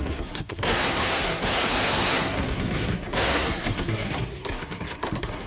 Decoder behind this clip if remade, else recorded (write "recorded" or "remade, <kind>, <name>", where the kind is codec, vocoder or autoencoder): remade, codec, SNAC